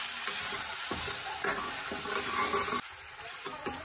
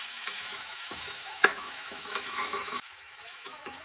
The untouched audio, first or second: first